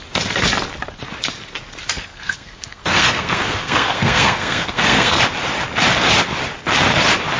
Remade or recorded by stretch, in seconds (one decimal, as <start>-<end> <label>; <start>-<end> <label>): 0.0-2.1 recorded; 2.1-5.2 remade; 5.2-7.4 recorded